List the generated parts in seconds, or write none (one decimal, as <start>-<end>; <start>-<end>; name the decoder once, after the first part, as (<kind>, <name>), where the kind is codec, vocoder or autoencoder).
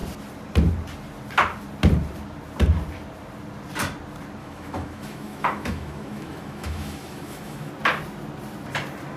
4.4-7.7 (autoencoder, DAC-VAE)